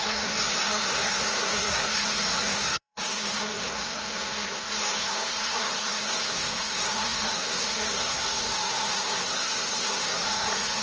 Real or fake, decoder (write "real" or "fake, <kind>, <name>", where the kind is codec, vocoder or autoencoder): fake, codec, SNAC